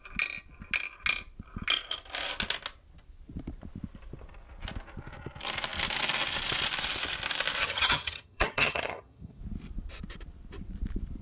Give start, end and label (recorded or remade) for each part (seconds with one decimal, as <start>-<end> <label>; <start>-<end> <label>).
0.0-7.6 recorded; 7.6-9.4 remade; 9.4-11.2 recorded